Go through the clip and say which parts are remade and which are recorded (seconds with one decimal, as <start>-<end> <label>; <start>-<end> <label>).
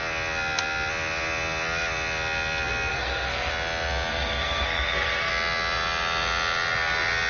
0.0-2.9 recorded; 2.9-3.5 remade; 3.5-4.1 recorded; 4.1-5.3 remade; 5.3-7.3 recorded